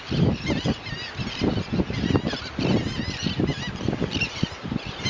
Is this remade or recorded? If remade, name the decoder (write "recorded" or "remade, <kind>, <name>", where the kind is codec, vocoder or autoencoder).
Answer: recorded